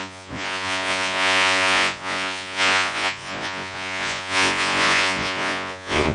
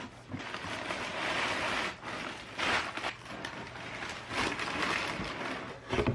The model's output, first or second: first